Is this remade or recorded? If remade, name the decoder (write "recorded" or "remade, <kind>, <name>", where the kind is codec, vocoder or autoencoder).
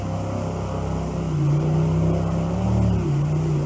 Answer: recorded